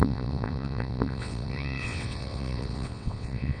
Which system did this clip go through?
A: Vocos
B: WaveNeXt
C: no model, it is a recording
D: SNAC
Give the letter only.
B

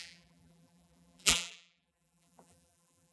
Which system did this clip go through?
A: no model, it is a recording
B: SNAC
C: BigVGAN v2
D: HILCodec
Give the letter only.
C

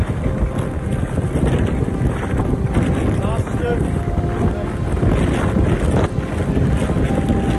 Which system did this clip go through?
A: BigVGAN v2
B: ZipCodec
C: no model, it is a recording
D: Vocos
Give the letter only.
C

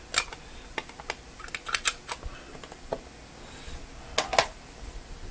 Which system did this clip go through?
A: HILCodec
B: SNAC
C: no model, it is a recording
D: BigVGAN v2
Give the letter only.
C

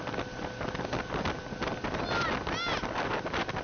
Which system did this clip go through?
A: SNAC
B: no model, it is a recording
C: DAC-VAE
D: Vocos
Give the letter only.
B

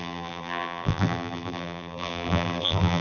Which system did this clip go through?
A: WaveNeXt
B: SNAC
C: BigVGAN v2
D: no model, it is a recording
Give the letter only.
C